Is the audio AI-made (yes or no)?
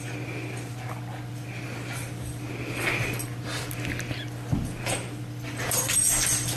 no